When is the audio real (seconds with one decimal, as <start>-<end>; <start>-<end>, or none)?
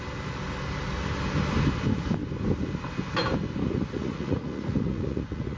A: 0.0-3.6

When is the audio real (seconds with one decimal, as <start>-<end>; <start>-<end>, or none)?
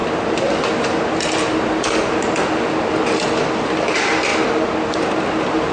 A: 0.0-5.7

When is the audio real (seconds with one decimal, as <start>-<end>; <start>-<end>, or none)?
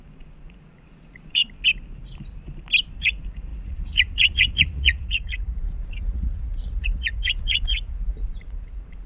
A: 1.4-3.0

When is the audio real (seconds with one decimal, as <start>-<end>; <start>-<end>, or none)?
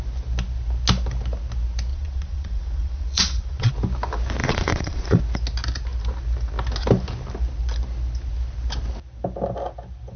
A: 0.0-1.9; 3.7-4.4; 5.2-10.2